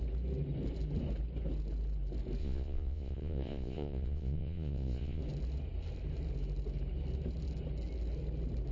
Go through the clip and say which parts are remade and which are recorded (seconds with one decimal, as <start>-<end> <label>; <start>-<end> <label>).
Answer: 0.0-2.4 recorded; 2.4-5.2 remade; 5.2-8.7 recorded